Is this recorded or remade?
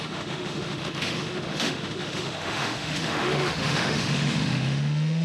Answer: remade